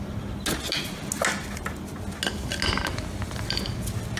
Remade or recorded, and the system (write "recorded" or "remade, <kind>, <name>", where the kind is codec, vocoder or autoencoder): recorded